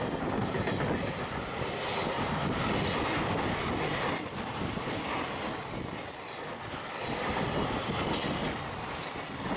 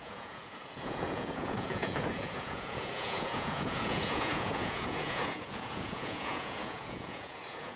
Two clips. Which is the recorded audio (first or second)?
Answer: first